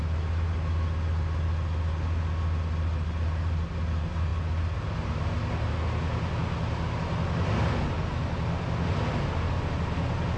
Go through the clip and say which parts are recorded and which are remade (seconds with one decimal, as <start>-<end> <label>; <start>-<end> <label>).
0.0-10.4 recorded